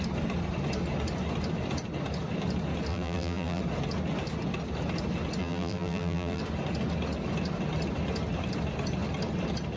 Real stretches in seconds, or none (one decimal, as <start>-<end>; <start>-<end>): 0.0-2.9; 3.6-5.4; 6.4-9.8